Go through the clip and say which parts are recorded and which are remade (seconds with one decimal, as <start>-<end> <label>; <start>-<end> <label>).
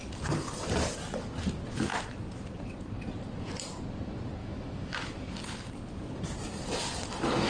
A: 0.0-4.4 recorded; 4.4-5.3 remade; 5.3-7.5 recorded